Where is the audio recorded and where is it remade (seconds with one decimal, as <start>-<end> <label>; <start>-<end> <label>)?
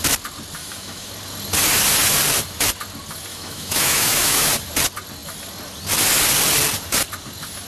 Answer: 0.0-0.6 recorded; 0.6-1.1 remade; 1.1-3.3 recorded; 3.3-4.5 remade; 4.5-7.7 recorded